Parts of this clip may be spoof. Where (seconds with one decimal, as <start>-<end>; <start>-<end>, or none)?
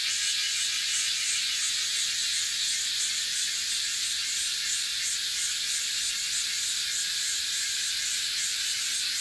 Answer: 0.0-1.6